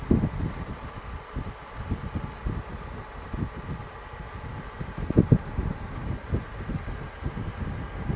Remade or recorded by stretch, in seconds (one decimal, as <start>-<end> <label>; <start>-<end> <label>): 0.0-8.2 recorded